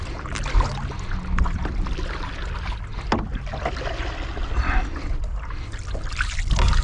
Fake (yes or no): no